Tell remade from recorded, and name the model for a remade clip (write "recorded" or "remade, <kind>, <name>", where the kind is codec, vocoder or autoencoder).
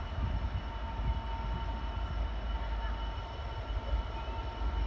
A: recorded